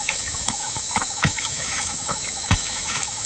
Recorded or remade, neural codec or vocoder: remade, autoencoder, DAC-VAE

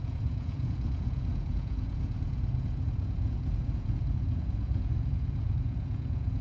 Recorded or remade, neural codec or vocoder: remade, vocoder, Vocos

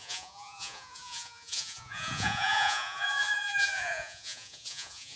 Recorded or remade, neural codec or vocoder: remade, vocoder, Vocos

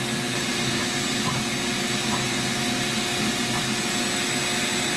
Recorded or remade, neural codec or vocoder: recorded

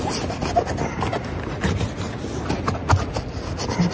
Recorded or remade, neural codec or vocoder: recorded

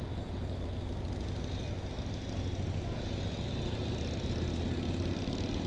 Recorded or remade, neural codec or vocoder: recorded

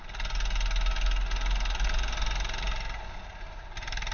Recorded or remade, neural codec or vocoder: recorded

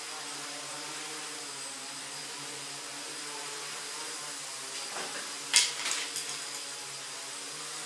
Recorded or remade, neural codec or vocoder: recorded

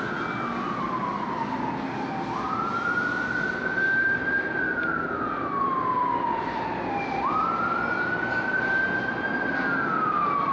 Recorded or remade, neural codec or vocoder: recorded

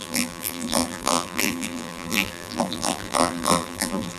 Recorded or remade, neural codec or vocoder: remade, vocoder, BigVGAN v2